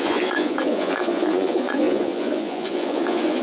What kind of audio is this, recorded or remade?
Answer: remade